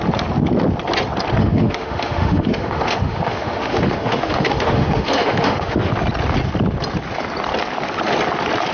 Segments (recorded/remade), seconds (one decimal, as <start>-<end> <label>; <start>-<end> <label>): 0.0-1.4 recorded; 1.4-5.9 remade; 5.9-8.7 recorded

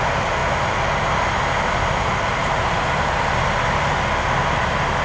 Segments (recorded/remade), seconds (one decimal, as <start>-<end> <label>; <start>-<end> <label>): 0.0-5.0 recorded